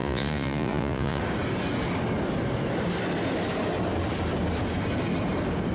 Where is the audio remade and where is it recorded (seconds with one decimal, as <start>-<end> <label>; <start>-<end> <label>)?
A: 0.0-1.2 remade; 1.2-5.7 recorded